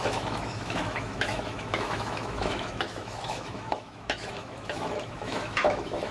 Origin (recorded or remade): remade